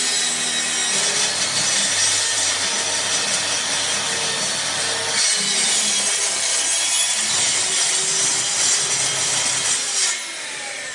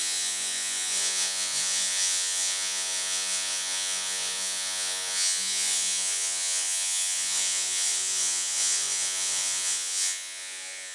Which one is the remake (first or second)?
second